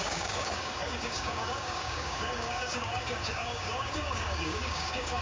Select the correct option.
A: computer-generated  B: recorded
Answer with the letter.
A